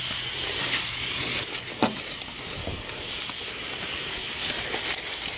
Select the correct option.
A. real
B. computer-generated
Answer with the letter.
A